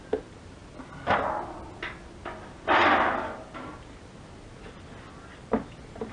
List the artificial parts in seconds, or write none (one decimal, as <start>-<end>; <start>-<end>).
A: none